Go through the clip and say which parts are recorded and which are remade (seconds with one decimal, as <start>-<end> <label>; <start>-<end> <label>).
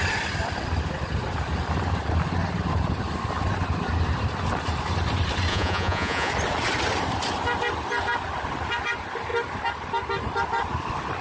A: 0.0-5.5 recorded; 5.5-6.3 remade; 6.3-11.2 recorded